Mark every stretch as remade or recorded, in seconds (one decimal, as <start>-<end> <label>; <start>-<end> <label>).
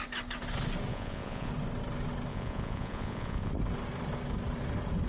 0.0-0.9 recorded; 0.9-1.5 remade; 1.5-2.3 recorded; 2.3-3.5 remade; 3.5-5.1 recorded